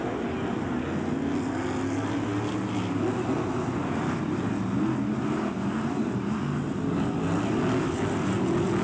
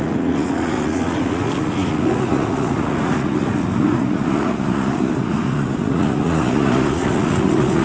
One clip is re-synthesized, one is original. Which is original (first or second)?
first